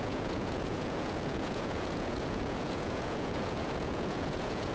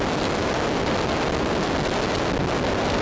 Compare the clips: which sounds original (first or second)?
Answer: second